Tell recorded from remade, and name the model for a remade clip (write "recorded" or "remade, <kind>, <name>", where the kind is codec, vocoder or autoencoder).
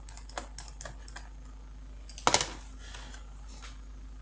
recorded